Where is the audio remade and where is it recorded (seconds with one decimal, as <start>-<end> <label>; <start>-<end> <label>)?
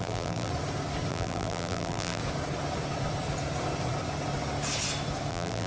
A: 0.0-0.5 remade; 0.5-1.1 recorded; 1.1-2.2 remade; 2.2-5.3 recorded; 5.3-5.7 remade